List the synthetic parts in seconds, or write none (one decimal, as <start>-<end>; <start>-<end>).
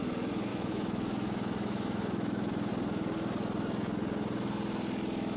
0.5-2.7